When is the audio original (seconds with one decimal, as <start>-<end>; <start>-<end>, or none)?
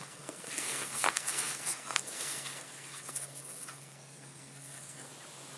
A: 5.1-5.6